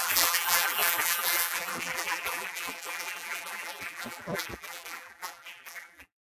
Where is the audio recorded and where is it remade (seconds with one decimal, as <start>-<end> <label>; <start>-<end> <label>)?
0.0-6.2 remade